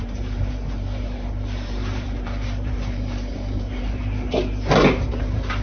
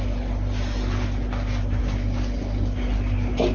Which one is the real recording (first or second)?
second